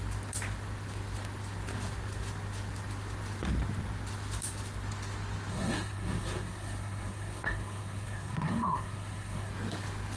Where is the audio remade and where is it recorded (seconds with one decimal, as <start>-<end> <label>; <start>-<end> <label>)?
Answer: 0.0-5.5 recorded; 5.5-9.5 remade; 9.5-10.2 recorded